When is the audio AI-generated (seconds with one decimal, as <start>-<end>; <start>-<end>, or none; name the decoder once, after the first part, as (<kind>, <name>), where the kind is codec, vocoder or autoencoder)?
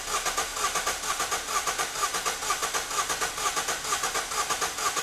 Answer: none